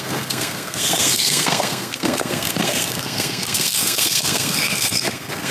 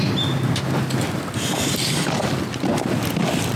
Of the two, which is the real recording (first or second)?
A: second